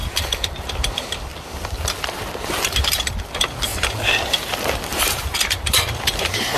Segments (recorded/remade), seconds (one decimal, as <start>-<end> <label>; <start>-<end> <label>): 0.0-4.9 recorded; 4.9-6.6 remade